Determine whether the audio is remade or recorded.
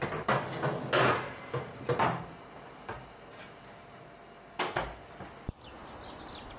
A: recorded